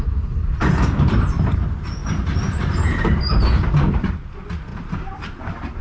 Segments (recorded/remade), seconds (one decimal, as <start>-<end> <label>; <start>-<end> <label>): 0.0-2.0 recorded; 2.0-3.2 remade; 3.2-4.7 recorded; 4.7-5.8 remade